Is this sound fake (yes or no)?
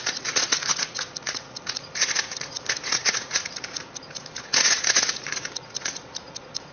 yes